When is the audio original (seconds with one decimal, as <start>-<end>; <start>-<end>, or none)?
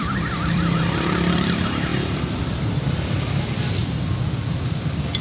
3.8-5.2